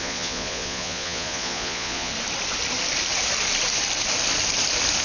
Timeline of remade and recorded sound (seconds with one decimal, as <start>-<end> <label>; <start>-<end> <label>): 0.0-2.1 remade; 2.1-5.0 recorded